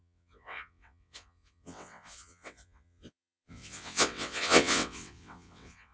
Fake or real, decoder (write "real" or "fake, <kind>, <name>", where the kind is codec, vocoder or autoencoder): fake, vocoder, WaveNeXt